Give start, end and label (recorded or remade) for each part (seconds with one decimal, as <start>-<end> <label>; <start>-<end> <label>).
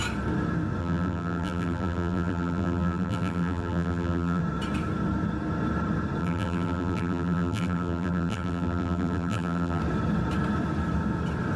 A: 0.0-0.8 recorded; 0.8-4.4 remade; 4.4-6.2 recorded; 6.2-9.8 remade; 9.8-11.6 recorded